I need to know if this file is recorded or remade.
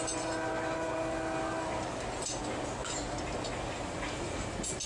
recorded